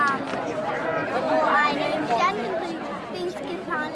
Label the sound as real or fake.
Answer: real